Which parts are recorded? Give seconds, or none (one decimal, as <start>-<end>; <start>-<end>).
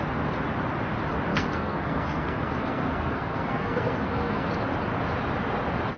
0.0-1.3; 4.5-6.0